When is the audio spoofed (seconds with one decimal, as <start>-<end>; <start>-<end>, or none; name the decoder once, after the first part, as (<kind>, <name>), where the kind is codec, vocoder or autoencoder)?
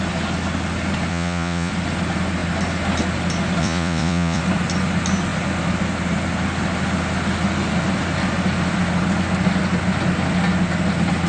1.1-1.7 (vocoder, Vocos); 3.6-4.4